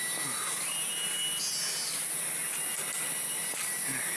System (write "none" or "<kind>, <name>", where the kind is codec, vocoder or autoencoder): none